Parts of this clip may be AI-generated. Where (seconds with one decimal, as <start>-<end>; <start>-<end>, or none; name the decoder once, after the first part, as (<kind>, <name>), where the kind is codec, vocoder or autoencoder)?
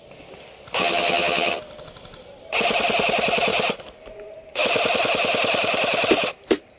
0.8-1.6 (vocoder, HiFi-GAN)